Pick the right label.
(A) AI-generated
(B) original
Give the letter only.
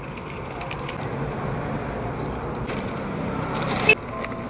B